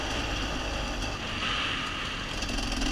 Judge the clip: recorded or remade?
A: recorded